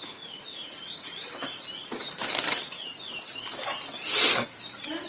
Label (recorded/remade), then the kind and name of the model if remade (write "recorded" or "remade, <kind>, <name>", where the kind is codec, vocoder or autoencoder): remade, vocoder, BigVGAN v2